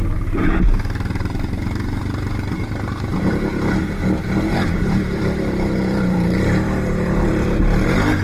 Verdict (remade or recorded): remade